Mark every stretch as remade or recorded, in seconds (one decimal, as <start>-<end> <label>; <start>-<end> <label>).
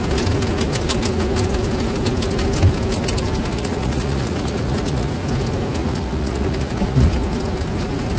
0.0-3.5 recorded; 3.5-5.1 remade; 5.1-5.8 recorded; 5.8-7.1 remade; 7.1-8.2 recorded